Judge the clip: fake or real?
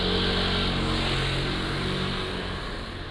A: real